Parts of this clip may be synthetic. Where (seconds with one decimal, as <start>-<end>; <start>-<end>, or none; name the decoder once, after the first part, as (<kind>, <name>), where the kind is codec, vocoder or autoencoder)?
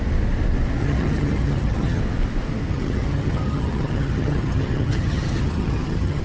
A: 0.8-2.0 (vocoder, HiFi-GAN); 2.7-6.2